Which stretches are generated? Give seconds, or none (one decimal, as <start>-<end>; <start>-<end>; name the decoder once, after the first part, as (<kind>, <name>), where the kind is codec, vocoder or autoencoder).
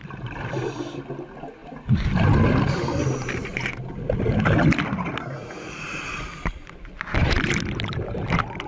5.4-6.2 (vocoder, Vocos)